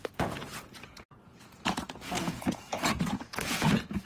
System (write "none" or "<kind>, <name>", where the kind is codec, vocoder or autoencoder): vocoder, Vocos